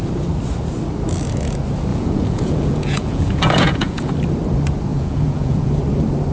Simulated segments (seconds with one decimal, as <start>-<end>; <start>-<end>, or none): 1.9-4.1; 4.9-5.7